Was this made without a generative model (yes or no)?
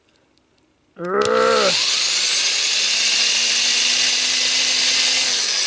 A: yes